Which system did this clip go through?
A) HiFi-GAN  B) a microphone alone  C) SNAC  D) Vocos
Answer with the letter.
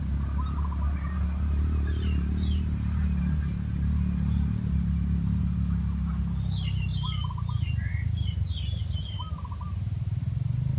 B